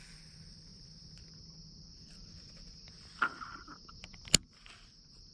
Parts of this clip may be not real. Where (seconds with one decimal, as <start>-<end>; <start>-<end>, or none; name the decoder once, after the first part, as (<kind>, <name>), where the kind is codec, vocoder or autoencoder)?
none

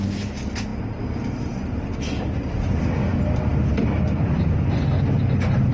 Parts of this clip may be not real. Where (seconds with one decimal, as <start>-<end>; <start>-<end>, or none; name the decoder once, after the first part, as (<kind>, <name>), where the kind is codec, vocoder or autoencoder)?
0.7-1.8 (vocoder, BigVGAN v2); 3.1-4.5